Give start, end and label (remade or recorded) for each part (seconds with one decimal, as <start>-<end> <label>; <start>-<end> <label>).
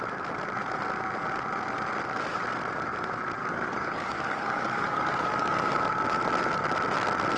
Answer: 0.0-3.4 recorded; 3.4-5.8 remade; 5.8-7.4 recorded